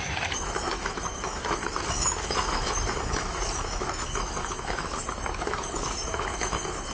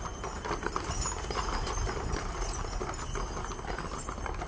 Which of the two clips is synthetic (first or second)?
first